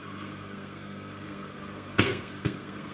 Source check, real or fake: fake